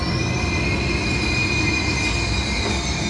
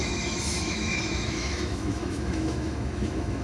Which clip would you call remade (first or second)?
second